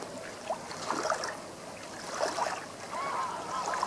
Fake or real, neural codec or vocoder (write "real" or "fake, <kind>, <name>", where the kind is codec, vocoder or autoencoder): real